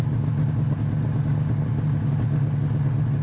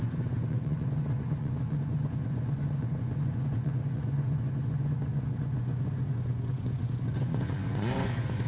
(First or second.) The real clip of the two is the first